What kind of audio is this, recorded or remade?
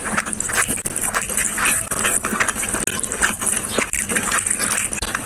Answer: recorded